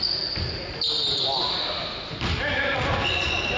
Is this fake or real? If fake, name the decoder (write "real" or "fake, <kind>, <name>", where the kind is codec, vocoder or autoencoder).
fake, vocoder, BigVGAN v2